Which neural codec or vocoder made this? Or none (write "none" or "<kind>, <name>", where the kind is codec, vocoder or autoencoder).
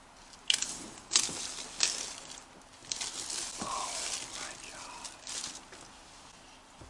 none